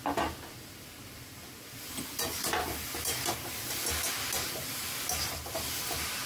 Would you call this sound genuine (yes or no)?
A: yes